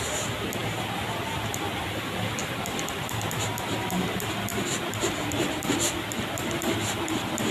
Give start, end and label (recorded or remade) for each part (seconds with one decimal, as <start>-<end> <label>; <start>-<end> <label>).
0.0-0.6 recorded; 0.6-1.8 remade; 1.8-2.4 recorded; 2.4-3.4 remade; 3.4-6.8 recorded; 6.8-7.5 remade